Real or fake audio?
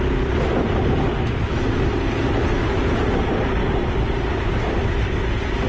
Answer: real